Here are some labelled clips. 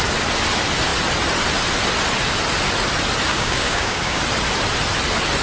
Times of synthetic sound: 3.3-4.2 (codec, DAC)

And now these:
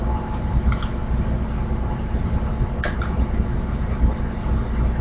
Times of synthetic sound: none

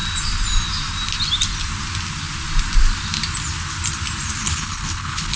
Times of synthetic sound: 4.4-5.4 (codec, HILCodec)

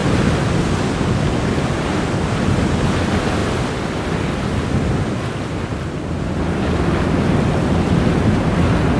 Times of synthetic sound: none

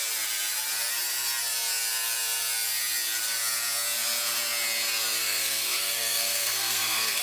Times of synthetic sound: 5.2-7.2 (codec, SNAC)

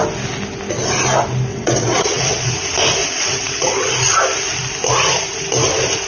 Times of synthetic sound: 1.5-2.5 (vocoder, WaveNeXt); 3.0-3.7